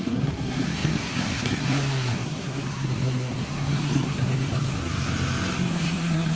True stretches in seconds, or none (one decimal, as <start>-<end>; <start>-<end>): 5.1-5.7